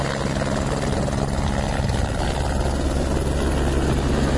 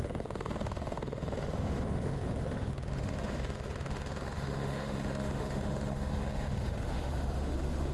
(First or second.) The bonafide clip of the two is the first